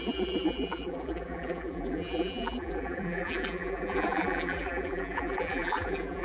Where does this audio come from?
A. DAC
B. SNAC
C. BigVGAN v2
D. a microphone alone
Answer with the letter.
C